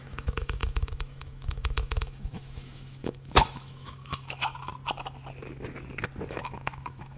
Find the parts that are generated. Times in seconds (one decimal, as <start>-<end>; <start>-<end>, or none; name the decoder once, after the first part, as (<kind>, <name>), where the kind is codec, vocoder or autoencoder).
0.0-4.7 (autoencoder, DAC-VAE); 6.3-7.2